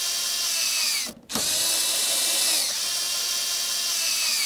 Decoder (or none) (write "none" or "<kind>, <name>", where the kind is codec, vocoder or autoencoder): none